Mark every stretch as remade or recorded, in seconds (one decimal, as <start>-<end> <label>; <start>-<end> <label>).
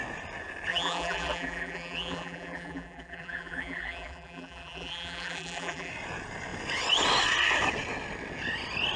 0.0-0.7 recorded; 0.7-5.9 remade; 5.9-9.0 recorded